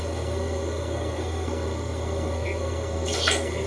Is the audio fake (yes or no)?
yes